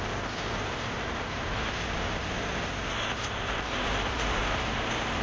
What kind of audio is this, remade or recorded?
remade